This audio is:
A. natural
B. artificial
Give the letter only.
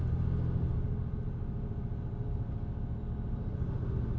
A